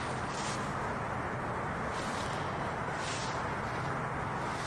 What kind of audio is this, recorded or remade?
recorded